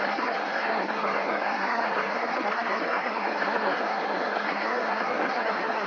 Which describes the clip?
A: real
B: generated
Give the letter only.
B